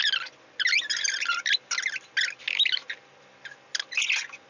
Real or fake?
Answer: real